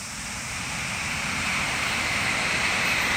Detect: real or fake real